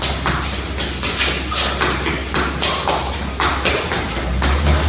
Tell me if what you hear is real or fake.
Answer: real